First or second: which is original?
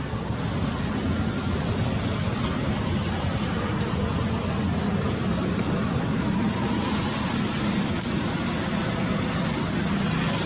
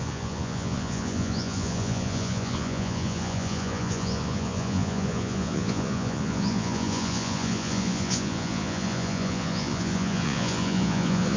first